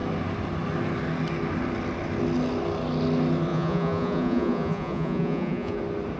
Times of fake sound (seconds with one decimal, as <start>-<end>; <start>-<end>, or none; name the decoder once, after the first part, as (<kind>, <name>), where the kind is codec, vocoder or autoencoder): 3.5-5.8 (vocoder, Vocos)